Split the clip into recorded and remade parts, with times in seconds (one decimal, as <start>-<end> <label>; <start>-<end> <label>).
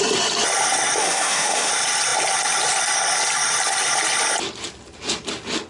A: 0.0-1.0 recorded; 1.0-1.7 remade; 1.7-5.7 recorded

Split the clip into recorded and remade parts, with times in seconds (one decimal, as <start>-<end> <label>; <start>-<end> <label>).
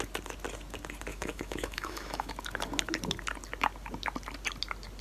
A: 0.0-1.1 recorded; 1.1-2.3 remade; 2.3-5.0 recorded